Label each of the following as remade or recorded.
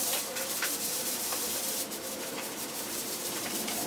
remade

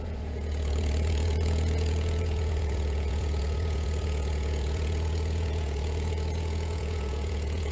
remade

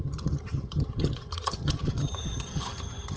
remade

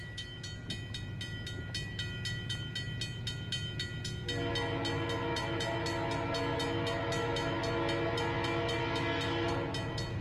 recorded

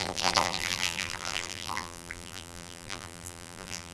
remade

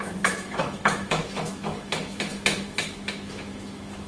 remade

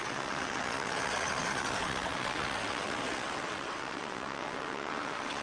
remade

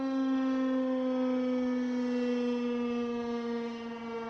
recorded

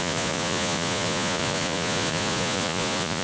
remade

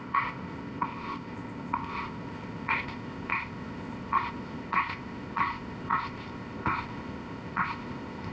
remade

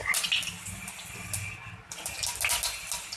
recorded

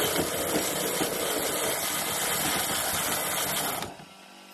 recorded